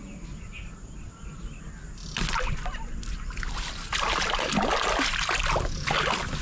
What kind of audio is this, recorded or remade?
recorded